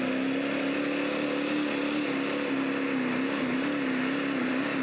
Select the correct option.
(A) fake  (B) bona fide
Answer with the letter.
B